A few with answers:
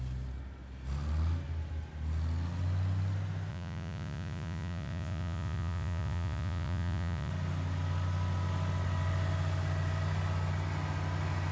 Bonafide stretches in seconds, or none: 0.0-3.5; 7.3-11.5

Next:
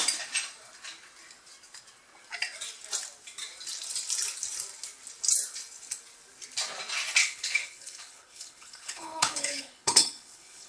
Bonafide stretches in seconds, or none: 0.0-7.2